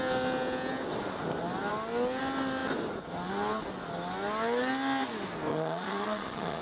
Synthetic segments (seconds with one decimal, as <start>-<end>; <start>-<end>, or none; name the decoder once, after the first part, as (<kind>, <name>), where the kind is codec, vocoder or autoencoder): 5.5-6.6 (vocoder, Vocos)